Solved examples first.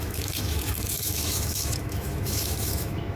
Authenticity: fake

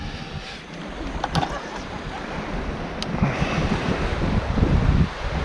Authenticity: real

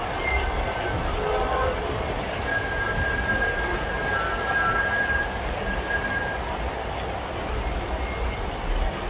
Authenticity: real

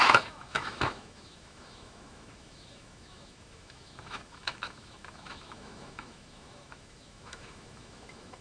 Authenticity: fake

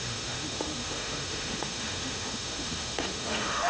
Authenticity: fake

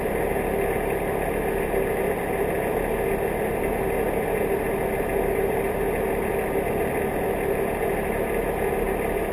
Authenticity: real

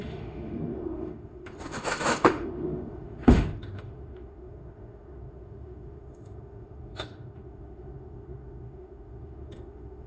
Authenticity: fake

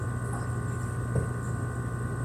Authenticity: real